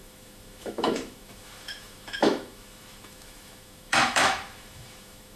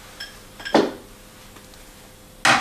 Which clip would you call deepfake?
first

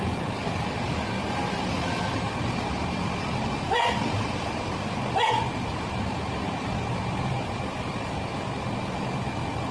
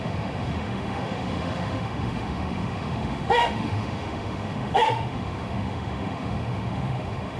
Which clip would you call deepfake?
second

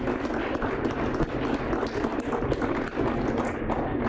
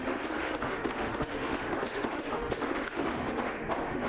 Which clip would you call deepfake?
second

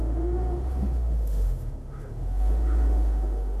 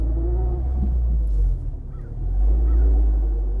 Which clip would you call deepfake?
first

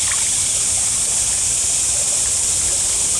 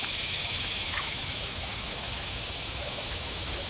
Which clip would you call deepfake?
second